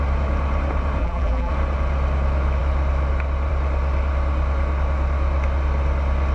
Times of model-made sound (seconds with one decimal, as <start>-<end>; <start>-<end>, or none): 1.0-1.5

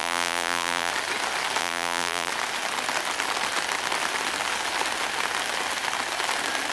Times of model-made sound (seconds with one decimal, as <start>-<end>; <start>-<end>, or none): 0.0-0.9; 1.6-2.3

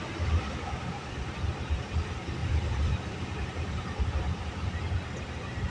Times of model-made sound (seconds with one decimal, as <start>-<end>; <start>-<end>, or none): 0.0-5.7

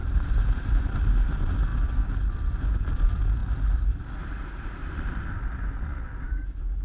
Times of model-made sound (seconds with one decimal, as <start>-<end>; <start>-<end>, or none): none

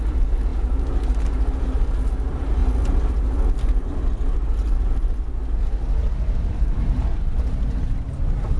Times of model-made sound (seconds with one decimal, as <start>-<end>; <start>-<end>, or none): 6.0-8.6

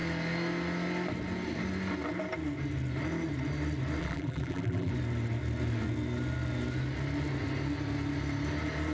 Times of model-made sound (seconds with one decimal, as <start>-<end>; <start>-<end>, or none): 4.0-4.9